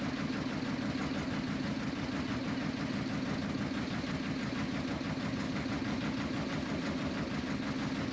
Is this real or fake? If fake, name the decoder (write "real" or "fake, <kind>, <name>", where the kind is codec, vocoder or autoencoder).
real